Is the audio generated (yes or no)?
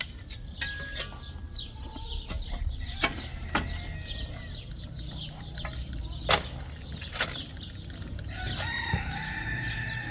no